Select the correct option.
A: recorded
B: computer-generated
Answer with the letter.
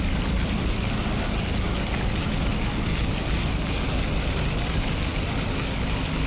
A